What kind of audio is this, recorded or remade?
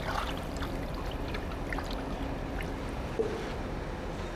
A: recorded